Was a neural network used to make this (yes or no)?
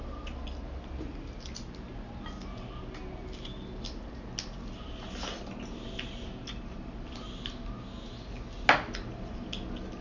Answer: no